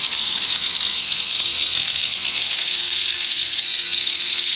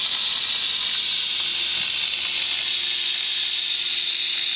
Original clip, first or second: second